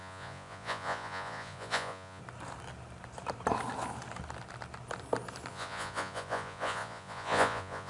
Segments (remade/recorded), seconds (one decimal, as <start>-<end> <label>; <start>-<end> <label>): 0.0-2.2 remade; 2.2-5.5 recorded; 5.5-7.9 remade